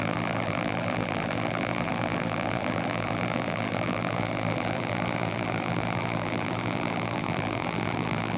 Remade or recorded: remade